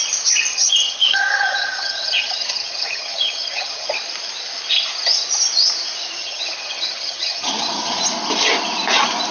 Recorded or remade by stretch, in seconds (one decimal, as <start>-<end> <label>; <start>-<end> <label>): 0.0-0.5 recorded; 0.5-3.9 remade; 3.9-6.2 recorded; 6.2-7.9 remade; 7.9-9.3 recorded